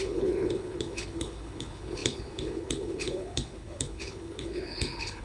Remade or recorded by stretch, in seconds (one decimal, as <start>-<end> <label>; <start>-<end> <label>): 0.0-5.2 remade